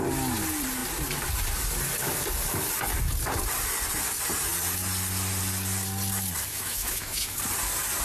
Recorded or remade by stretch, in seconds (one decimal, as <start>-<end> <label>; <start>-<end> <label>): 0.0-6.5 recorded; 6.5-7.4 remade; 7.4-8.0 recorded